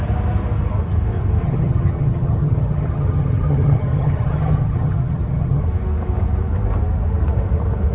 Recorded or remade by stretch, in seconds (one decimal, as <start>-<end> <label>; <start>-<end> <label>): 0.0-1.4 recorded; 1.4-5.6 remade; 5.6-7.9 recorded